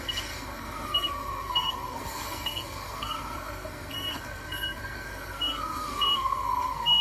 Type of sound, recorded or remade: remade